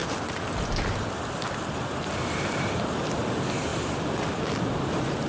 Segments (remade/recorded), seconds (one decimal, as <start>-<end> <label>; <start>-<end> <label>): 0.0-3.2 remade; 3.2-3.7 recorded; 3.7-4.7 remade; 4.7-5.3 recorded